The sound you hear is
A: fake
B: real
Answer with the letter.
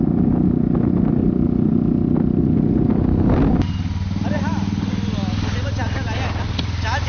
B